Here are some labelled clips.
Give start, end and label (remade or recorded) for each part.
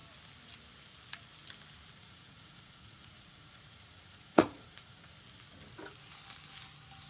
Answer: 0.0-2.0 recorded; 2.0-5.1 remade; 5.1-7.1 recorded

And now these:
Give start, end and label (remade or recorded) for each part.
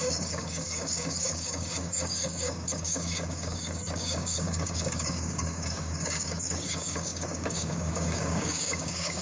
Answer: 0.0-9.2 remade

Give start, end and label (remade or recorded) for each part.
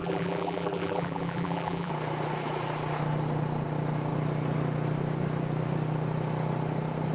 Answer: 0.0-1.9 remade; 1.9-7.1 recorded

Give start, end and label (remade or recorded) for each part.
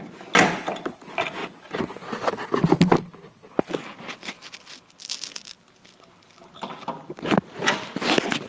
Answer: 0.0-8.5 recorded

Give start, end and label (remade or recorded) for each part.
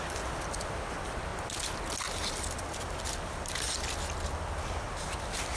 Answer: 0.0-5.6 recorded